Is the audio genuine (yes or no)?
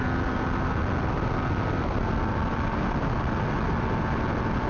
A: yes